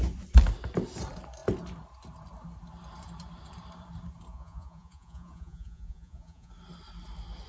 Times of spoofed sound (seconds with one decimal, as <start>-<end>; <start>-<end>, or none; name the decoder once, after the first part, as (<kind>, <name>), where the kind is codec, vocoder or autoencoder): 4.3-6.5 (vocoder, Vocos)

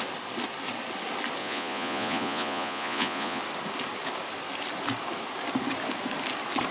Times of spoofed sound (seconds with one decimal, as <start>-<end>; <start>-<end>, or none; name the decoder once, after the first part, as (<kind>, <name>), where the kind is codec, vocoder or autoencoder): 1.4-3.4 (vocoder, Vocos)

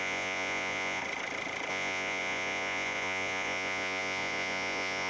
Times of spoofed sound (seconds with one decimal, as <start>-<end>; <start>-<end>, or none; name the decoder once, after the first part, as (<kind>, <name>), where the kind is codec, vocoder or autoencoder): 0.0-1.0 (vocoder, Vocos); 1.7-5.1

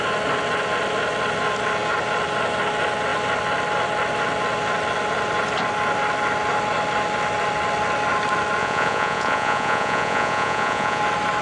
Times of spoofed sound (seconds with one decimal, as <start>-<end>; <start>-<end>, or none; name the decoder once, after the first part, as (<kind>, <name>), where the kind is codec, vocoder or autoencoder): 8.6-11.0 (vocoder, Vocos)

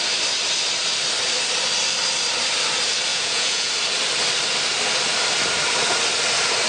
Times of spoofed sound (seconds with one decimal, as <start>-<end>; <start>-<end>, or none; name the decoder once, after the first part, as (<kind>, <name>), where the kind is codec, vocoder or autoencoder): 3.1-3.7 (vocoder, Vocos)